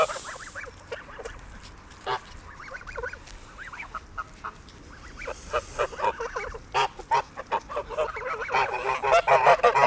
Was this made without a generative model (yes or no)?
yes